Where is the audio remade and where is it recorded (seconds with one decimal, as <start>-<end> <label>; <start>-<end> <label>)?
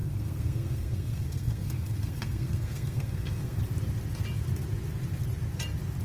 0.0-3.6 remade; 3.6-6.0 recorded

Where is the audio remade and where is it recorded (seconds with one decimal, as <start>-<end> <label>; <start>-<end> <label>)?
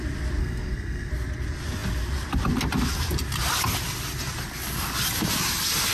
0.0-0.4 recorded; 0.4-1.1 remade; 1.1-5.9 recorded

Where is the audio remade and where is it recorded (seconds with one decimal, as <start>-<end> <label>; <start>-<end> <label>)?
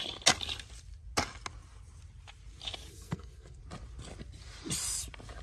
0.0-2.9 recorded; 2.9-3.6 remade; 3.6-5.4 recorded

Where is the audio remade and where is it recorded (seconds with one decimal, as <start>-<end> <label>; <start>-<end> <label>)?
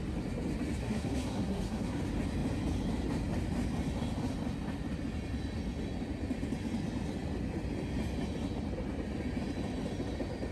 0.0-0.8 recorded; 0.8-2.0 remade; 2.0-10.5 recorded